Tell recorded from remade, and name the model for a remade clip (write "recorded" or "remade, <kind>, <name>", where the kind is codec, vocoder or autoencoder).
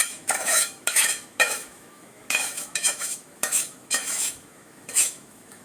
remade, autoencoder, DAC-VAE